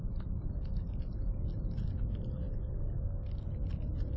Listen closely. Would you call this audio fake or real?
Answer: real